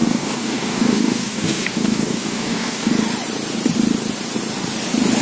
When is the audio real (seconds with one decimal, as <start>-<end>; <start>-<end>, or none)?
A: 2.9-5.2